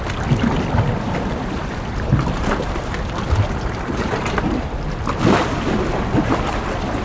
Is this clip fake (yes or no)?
yes